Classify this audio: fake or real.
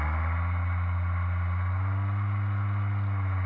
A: real